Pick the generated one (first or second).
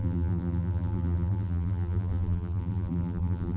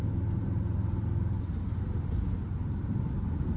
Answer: first